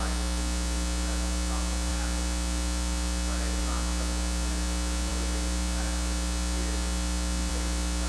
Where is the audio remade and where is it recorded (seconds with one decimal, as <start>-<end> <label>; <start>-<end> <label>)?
0.0-8.1 recorded